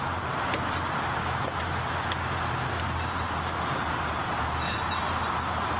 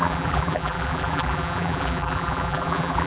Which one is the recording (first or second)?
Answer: first